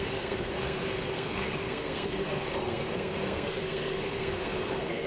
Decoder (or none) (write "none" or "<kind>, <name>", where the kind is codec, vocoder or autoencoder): codec, SNAC